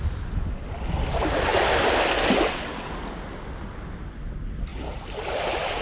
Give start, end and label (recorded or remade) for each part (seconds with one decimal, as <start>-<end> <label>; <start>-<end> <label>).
0.0-4.7 recorded; 4.7-5.8 remade